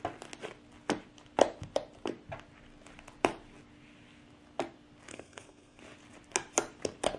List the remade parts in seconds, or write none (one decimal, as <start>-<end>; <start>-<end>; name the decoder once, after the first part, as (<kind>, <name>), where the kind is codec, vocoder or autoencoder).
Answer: 5.1-5.8 (codec, SNAC)